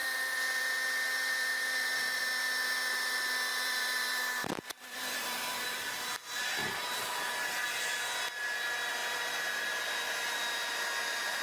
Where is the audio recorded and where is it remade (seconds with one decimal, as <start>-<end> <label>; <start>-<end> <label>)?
0.0-2.2 remade; 2.2-3.5 recorded; 3.5-5.9 remade; 5.9-9.0 recorded; 9.0-10.7 remade; 10.7-11.4 recorded